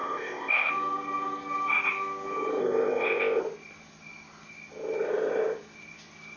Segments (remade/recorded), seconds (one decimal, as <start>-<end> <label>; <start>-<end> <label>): 0.0-0.7 remade; 0.7-2.6 recorded; 2.6-3.4 remade; 3.4-6.4 recorded